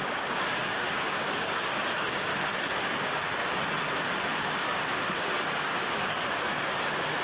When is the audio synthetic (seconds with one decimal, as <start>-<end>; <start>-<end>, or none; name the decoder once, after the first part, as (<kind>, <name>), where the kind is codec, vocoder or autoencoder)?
0.0-2.3 (codec, DAC); 2.8-3.4; 4.4-7.2